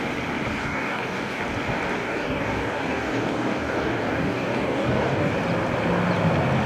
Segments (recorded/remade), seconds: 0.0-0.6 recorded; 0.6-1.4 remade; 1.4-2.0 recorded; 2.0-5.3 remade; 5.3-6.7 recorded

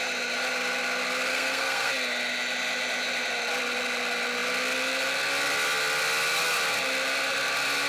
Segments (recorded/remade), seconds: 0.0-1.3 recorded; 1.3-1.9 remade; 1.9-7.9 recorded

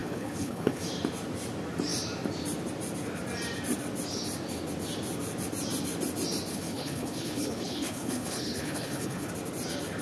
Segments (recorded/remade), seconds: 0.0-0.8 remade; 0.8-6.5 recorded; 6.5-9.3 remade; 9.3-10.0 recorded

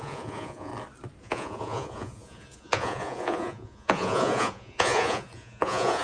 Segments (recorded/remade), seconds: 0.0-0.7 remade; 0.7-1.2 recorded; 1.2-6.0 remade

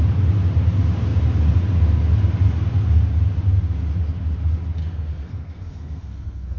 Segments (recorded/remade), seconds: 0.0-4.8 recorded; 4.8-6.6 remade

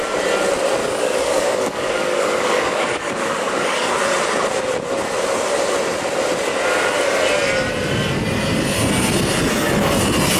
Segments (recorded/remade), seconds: 0.0-0.8 recorded; 0.8-3.9 remade; 3.9-10.4 recorded

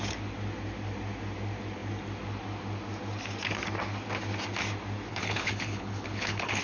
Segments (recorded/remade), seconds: 0.0-5.1 recorded; 5.1-6.6 remade